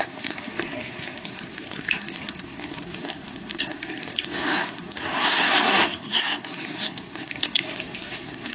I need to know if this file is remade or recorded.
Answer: remade